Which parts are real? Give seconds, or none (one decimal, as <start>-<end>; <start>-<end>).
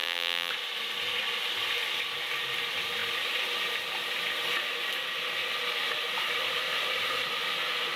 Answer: 0.5-8.0